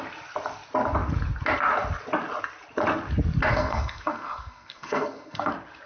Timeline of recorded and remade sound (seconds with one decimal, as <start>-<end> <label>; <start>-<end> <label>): 0.0-3.5 recorded; 3.5-5.5 remade; 5.5-5.9 recorded